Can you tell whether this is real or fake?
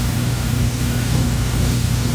fake